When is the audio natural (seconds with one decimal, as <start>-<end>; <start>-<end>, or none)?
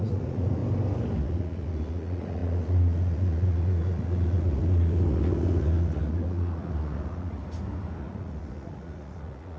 0.6-1.2; 7.4-8.0